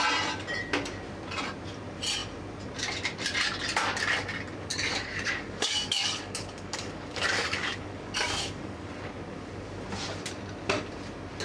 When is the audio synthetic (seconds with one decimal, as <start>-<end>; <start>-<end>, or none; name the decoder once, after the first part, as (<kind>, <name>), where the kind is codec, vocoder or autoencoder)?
4.7-8.9 (codec, DAC)